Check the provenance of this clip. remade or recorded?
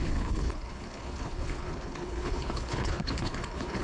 remade